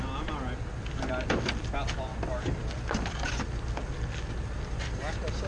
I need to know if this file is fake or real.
real